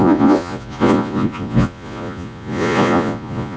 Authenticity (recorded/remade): remade